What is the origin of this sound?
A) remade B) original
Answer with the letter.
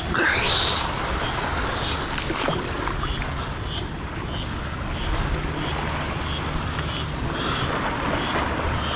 B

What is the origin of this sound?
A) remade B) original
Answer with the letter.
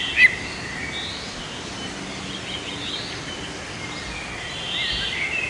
B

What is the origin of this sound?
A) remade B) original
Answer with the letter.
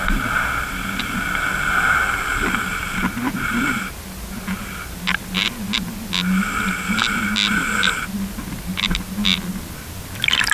B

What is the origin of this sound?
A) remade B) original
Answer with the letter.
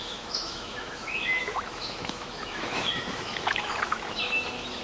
A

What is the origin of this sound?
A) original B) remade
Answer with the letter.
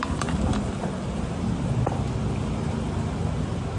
A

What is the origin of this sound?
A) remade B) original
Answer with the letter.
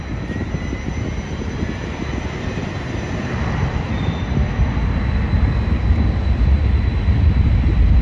B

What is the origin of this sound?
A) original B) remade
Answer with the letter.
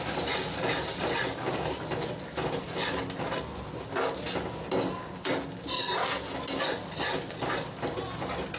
A